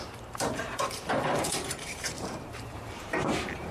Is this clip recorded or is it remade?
remade